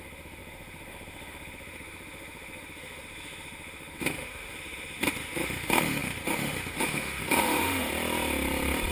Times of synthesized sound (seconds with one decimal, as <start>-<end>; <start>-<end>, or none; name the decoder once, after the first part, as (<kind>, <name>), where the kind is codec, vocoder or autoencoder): 0.0-7.9 (autoencoder, DAC-VAE)